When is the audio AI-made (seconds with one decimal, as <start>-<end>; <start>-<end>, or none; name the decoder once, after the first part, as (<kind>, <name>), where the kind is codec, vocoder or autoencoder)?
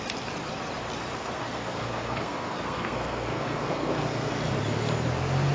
1.2-4.3 (codec, SNAC)